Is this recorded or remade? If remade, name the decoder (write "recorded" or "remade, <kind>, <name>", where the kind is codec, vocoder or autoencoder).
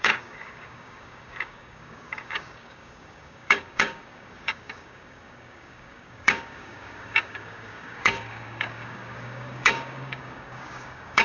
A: remade, codec, DAC